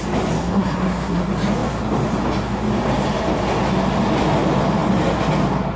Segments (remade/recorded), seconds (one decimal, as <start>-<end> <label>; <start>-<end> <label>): 0.0-0.4 recorded; 0.4-1.2 remade; 1.2-5.8 recorded